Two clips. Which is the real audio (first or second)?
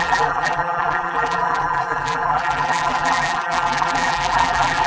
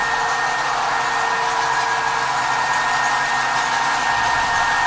second